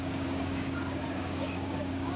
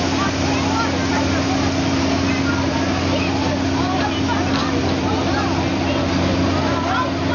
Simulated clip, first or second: first